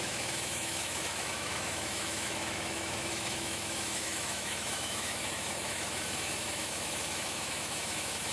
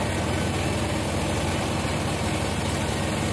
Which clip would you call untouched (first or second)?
second